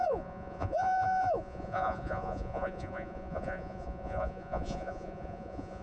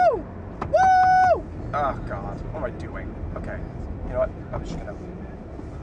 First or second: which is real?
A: second